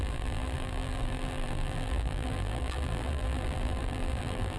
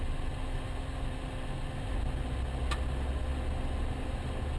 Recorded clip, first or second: second